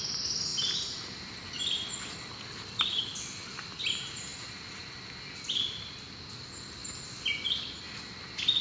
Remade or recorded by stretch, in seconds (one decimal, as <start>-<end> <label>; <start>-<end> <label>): 0.0-8.6 recorded